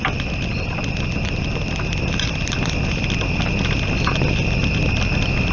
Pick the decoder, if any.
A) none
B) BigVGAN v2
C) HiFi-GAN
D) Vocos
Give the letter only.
A